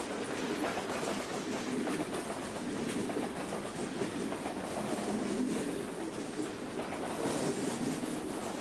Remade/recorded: recorded